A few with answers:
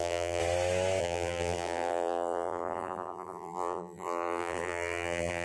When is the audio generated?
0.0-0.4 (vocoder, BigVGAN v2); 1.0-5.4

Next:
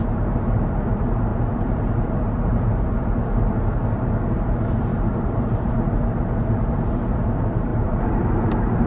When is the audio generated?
1.3-2.9 (vocoder, BigVGAN v2); 4.9-6.2; 7.7-8.9

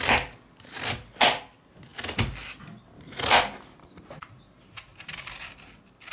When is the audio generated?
4.9-5.4 (vocoder, BigVGAN v2)

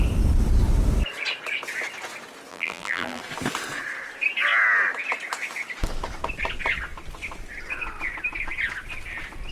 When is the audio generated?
2.5-3.2 (vocoder, BigVGAN v2)

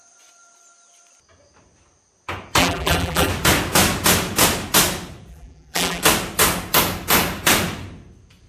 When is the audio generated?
2.6-3.3 (vocoder, BigVGAN v2); 5.3-6.0

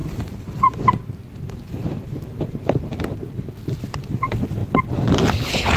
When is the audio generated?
0.0-2.8 (vocoder, BigVGAN v2)